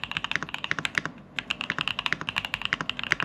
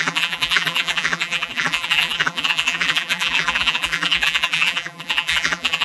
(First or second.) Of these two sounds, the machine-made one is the second